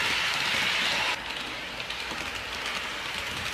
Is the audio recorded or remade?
recorded